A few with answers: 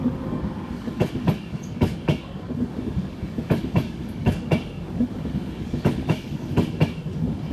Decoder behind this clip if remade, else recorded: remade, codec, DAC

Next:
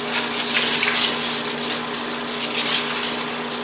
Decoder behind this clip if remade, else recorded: recorded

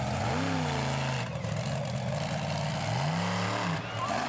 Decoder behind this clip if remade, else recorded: recorded